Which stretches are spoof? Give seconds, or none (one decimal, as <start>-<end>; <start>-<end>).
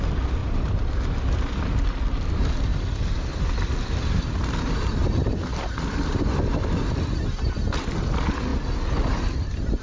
0.4-1.1